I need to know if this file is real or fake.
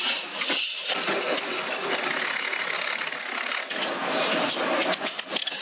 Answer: real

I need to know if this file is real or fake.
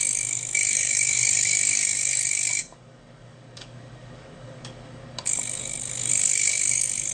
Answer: fake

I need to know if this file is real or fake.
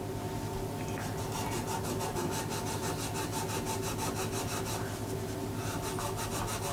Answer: real